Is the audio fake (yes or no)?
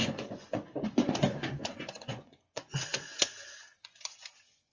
yes